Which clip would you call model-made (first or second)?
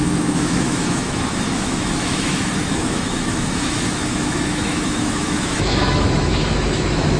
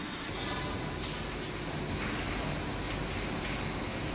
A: first